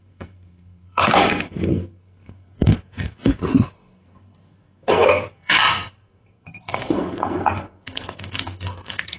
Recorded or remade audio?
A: remade